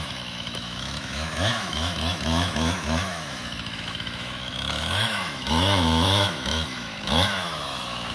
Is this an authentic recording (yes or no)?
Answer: no